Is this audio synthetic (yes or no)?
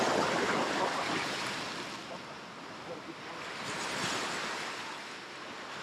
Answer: no